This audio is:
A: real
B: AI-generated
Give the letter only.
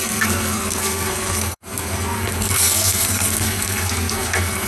B